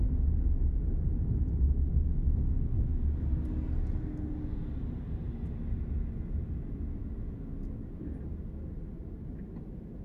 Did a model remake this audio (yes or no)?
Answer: no